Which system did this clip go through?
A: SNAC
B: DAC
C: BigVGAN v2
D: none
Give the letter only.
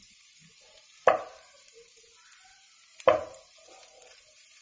C